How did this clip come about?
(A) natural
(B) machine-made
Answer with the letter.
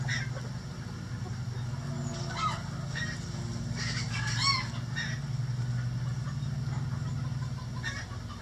A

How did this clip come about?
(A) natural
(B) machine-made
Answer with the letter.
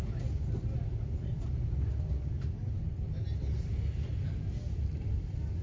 A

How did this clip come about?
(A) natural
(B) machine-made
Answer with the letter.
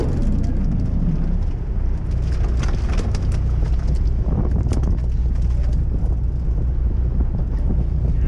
A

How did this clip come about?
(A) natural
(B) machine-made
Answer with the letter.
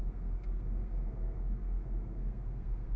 B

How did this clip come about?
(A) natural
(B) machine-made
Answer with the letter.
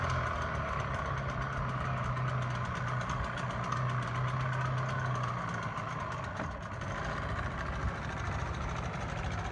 A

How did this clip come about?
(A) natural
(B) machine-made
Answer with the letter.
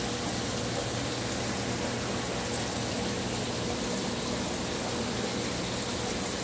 A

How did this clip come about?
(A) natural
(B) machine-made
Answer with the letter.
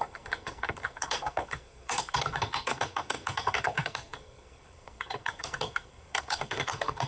B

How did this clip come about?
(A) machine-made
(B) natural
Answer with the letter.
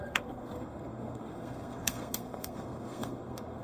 A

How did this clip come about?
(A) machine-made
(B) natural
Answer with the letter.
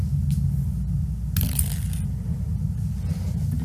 B